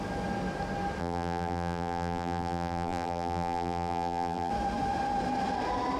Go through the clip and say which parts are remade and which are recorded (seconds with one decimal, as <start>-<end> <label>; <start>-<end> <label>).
0.0-1.0 recorded; 1.0-4.5 remade; 4.5-6.0 recorded